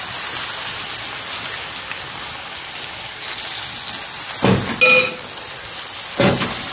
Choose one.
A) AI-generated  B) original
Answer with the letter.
B